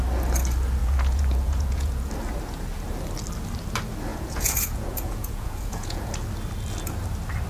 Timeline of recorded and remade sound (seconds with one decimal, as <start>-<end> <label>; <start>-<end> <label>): 0.0-0.8 recorded; 0.8-2.1 remade; 2.1-4.1 recorded; 4.1-6.1 remade; 6.1-7.5 recorded